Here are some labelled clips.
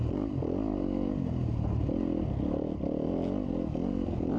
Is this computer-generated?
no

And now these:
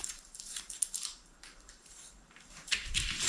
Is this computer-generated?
yes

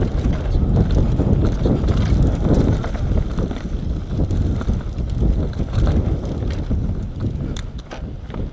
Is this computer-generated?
no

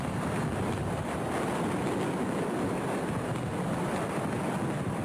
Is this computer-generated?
no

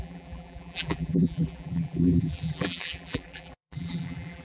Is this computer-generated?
yes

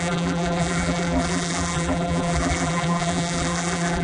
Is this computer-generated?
yes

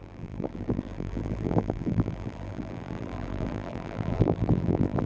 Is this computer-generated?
yes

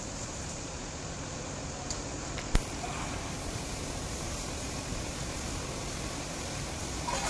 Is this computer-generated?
yes